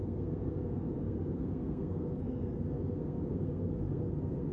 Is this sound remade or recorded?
remade